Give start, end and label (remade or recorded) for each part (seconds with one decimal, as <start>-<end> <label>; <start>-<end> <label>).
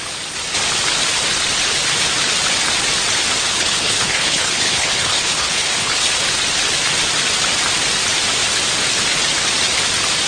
0.0-3.4 recorded; 3.4-6.1 remade; 6.1-10.3 recorded